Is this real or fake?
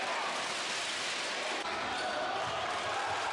real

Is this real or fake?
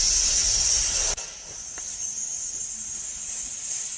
real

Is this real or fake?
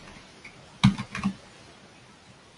real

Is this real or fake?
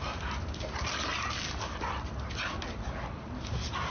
real